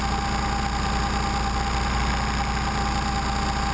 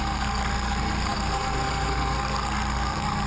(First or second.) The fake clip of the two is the second